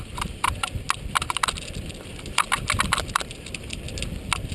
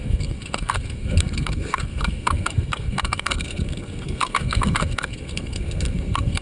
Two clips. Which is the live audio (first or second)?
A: first